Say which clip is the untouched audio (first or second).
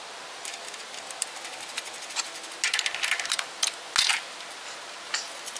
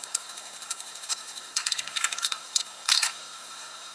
first